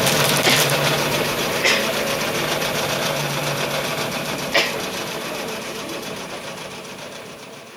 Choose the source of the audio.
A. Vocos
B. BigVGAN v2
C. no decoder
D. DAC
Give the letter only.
B